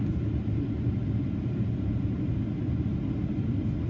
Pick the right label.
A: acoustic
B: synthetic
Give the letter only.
A